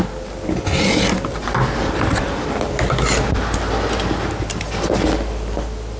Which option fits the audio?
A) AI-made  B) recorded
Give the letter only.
B